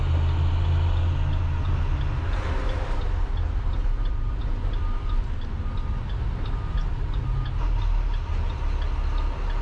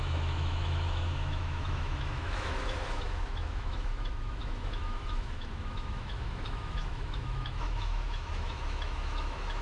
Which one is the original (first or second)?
first